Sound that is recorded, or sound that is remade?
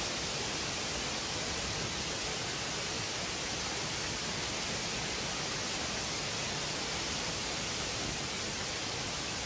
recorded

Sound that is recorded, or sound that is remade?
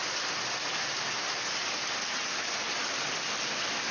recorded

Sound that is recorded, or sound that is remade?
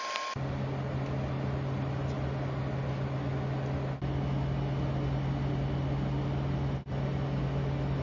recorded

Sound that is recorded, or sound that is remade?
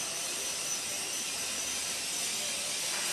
recorded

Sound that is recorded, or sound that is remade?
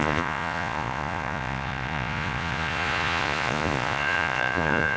remade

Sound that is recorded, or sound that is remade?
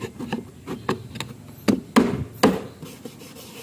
recorded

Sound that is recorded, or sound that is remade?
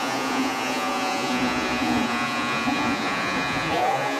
remade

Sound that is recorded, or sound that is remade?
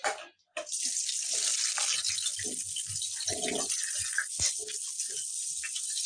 recorded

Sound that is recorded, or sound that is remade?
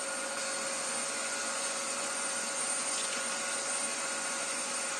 remade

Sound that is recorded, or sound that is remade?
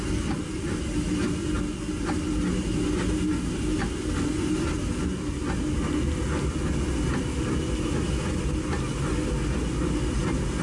recorded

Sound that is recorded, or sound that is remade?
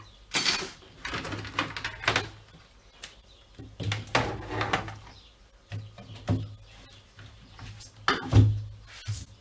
recorded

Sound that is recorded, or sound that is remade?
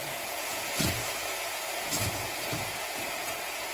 remade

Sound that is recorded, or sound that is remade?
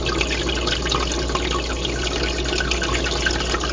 recorded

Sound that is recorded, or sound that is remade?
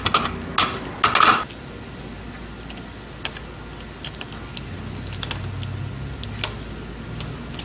recorded